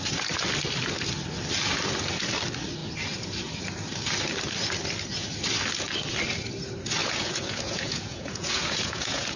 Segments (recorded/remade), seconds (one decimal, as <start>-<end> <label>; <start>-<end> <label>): 0.0-7.0 recorded; 7.0-9.4 remade